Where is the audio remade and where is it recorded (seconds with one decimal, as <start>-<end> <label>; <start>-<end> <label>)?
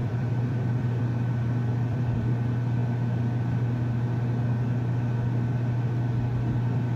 0.0-1.0 remade; 1.0-1.7 recorded; 1.7-2.3 remade; 2.3-7.0 recorded